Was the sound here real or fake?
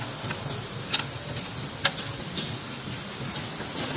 real